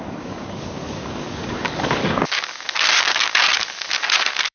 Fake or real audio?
fake